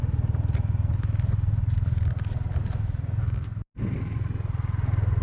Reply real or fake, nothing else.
real